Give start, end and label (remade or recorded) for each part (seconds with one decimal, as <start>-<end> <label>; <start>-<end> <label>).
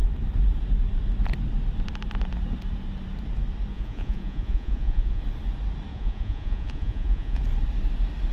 0.0-3.7 recorded; 3.7-5.2 remade; 5.2-5.9 recorded; 5.9-7.4 remade; 7.4-8.3 recorded